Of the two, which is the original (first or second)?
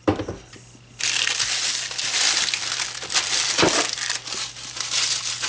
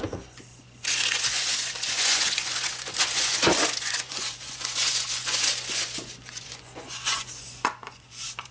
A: first